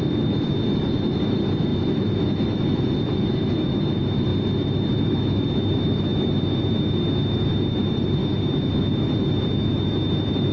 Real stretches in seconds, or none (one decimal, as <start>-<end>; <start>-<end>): 4.3-5.0